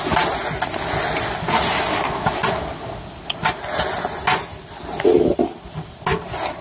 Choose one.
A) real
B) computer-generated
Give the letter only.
A